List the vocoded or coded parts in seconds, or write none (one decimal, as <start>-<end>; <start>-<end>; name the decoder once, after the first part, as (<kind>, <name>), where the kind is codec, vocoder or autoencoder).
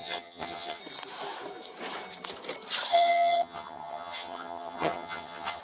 0.0-0.8 (vocoder, HiFi-GAN); 2.9-5.6